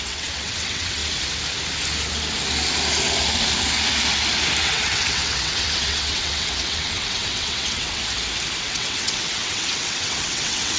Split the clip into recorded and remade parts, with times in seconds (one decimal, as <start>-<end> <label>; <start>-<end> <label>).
0.0-1.0 remade; 1.0-4.6 recorded; 4.6-8.0 remade; 8.0-8.6 recorded; 8.6-10.8 remade